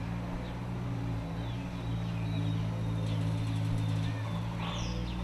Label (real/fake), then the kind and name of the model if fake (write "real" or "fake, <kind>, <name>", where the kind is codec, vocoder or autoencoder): real